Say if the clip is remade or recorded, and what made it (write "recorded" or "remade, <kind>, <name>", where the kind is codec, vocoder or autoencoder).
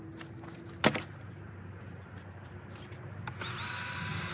recorded